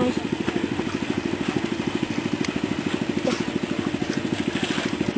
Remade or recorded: recorded